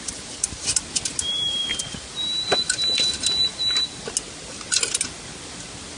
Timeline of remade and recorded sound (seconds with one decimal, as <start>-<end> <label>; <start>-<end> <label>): 0.0-6.0 recorded